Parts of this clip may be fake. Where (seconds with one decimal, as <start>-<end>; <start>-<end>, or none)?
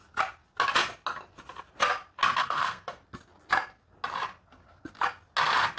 2.4-3.0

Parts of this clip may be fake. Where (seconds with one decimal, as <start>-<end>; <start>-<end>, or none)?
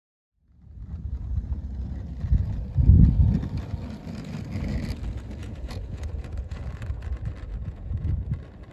5.4-6.6; 7.6-8.1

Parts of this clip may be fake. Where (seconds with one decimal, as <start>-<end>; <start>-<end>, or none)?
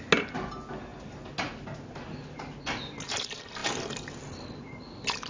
none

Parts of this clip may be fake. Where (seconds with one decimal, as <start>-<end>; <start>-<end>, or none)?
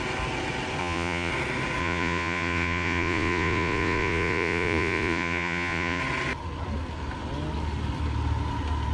0.8-1.3; 1.8-6.0